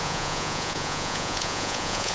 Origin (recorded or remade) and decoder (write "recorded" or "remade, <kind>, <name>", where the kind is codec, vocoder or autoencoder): remade, vocoder, Vocos